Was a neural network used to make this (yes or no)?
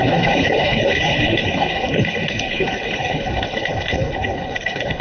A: yes